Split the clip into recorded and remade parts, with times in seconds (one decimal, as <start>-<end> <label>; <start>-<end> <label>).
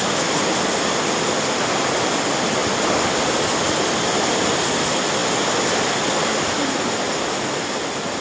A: 0.0-8.2 recorded